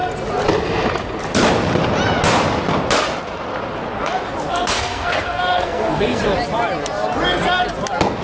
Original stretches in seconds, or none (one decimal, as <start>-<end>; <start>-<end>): 0.0-4.5; 6.2-8.2